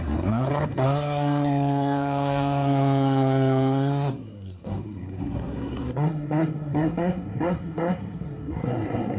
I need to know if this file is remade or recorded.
remade